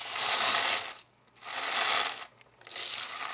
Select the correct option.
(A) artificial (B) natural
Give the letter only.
B